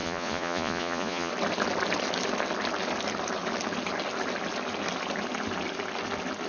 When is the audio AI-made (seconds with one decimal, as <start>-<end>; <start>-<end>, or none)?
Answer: 0.0-1.3